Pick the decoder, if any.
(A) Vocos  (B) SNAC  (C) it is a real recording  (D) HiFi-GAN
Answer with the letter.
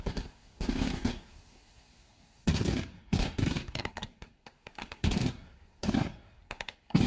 B